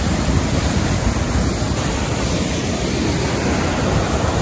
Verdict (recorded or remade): recorded